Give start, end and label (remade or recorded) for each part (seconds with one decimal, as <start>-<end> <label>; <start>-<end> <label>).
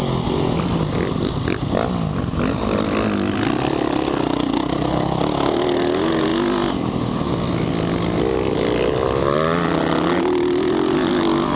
0.0-11.6 recorded